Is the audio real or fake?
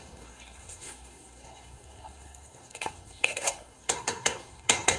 fake